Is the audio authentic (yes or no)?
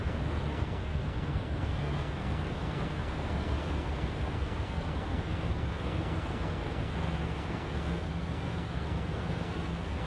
no